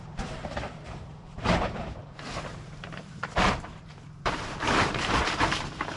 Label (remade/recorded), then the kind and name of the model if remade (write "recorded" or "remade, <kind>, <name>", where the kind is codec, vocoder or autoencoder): remade, vocoder, BigVGAN v2